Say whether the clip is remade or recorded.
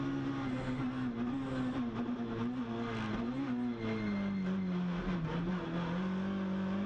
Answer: recorded